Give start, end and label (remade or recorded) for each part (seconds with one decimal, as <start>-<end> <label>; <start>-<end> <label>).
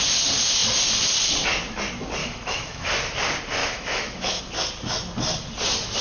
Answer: 0.0-2.2 recorded; 2.2-2.9 remade; 2.9-3.6 recorded; 3.6-4.4 remade; 4.4-6.0 recorded